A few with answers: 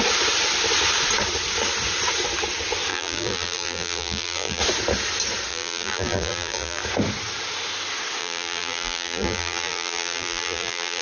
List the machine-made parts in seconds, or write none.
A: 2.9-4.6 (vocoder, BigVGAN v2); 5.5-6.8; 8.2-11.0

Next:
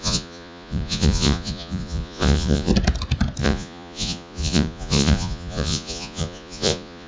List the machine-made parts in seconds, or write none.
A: 0.0-2.7 (vocoder, Vocos); 3.4-7.1

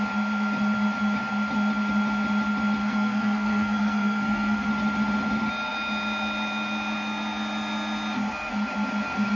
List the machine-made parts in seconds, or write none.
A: 2.8-4.7 (codec, SNAC)